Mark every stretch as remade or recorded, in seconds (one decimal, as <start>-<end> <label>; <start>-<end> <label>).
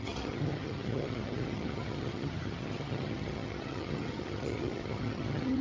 0.0-5.6 remade